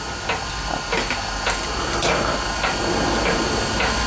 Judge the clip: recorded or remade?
recorded